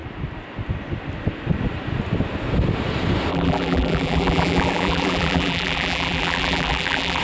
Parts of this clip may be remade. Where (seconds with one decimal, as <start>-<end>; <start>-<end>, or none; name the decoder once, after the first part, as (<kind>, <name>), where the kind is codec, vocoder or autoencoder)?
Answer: 3.3-7.2 (vocoder, BigVGAN v2)